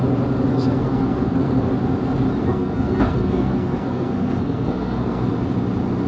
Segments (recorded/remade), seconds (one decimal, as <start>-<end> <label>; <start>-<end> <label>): 0.0-0.5 recorded; 0.5-1.7 remade; 1.7-2.4 recorded; 2.4-5.3 remade; 5.3-6.1 recorded